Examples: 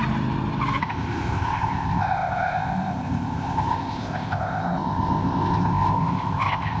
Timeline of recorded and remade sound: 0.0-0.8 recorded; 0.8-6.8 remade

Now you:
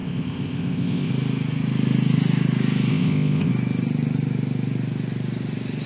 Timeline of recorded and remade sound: 0.0-1.1 remade; 1.1-2.9 recorded; 2.9-3.5 remade; 3.5-5.9 recorded

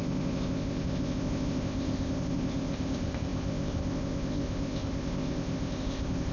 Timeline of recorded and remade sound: 0.0-6.3 remade

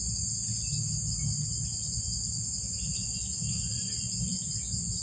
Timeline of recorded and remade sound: 0.0-5.0 recorded

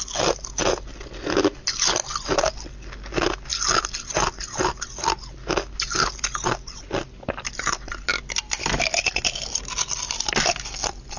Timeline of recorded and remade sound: 0.0-11.2 recorded

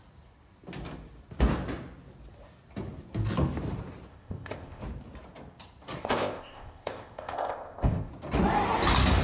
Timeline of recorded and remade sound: 0.0-4.1 recorded; 4.1-4.8 remade; 4.8-6.0 recorded; 6.0-8.1 remade; 8.1-9.2 recorded

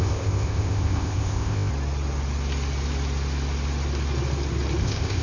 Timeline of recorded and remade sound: 0.0-1.7 remade; 1.7-4.8 recorded; 4.8-5.2 remade

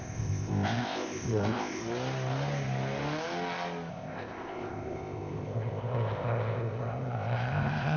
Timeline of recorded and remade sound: 0.0-1.8 remade; 1.8-3.9 recorded; 3.9-8.0 remade